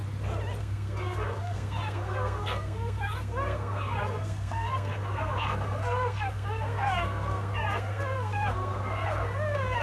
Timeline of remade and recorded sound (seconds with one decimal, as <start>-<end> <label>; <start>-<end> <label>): 0.0-0.6 recorded; 0.6-9.8 remade